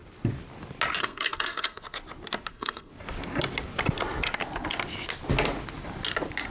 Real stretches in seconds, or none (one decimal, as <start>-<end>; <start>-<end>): 0.0-1.0; 1.8-2.5; 2.9-6.5